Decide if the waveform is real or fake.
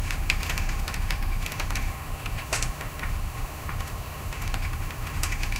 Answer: fake